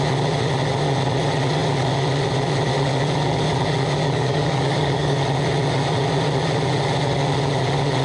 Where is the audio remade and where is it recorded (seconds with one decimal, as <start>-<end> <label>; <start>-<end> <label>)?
0.0-4.0 recorded; 4.0-5.2 remade; 5.2-8.0 recorded